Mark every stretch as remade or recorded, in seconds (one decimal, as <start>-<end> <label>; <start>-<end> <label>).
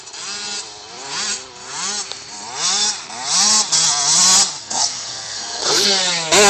0.0-4.6 recorded; 4.6-5.9 remade; 5.9-6.5 recorded